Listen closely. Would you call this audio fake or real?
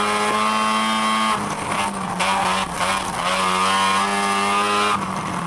real